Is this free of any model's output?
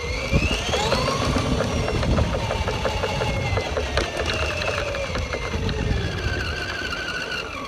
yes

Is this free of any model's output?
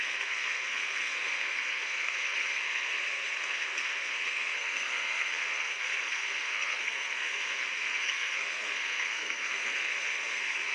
no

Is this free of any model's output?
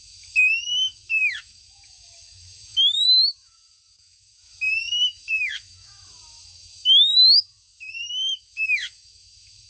no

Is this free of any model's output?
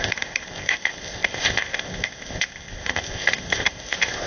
no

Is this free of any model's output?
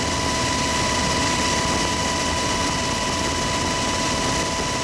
yes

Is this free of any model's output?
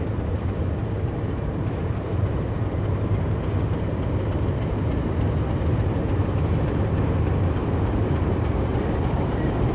no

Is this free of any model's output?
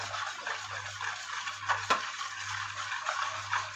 yes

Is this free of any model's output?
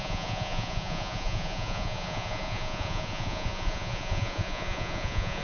no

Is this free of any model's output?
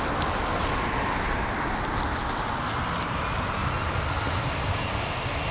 yes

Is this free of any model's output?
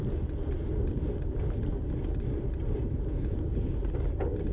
yes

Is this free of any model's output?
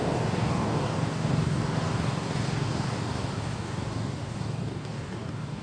no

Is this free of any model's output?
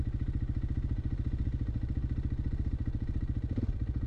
no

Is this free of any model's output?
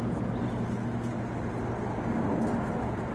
yes